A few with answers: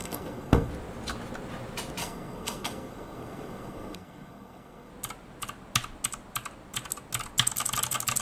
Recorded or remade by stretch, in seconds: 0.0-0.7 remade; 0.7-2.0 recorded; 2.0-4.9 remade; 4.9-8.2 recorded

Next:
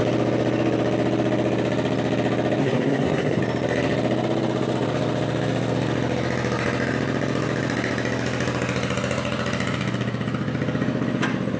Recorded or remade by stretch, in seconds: 0.0-2.6 recorded; 2.6-3.4 remade; 3.4-11.6 recorded

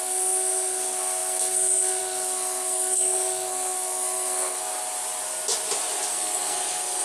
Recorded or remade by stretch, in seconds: 0.0-4.7 remade; 4.7-6.1 recorded; 6.1-7.0 remade

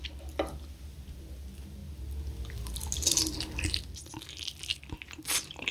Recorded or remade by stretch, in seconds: 0.0-5.7 recorded

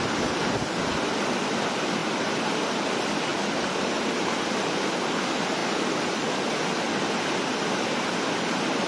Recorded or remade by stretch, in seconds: 0.0-8.9 recorded

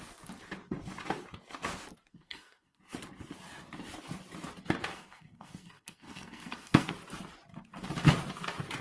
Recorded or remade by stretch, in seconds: 0.0-2.1 recorded; 2.1-2.8 remade; 2.8-4.9 recorded; 4.9-6.9 remade; 6.9-8.8 recorded

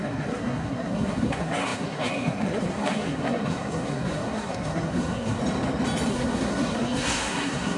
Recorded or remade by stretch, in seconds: 0.0-5.4 remade; 5.4-6.1 recorded; 6.1-7.8 remade

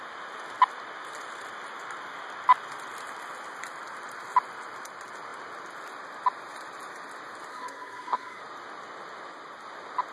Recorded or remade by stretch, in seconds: 0.0-7.5 recorded; 7.5-8.4 remade; 8.4-10.1 recorded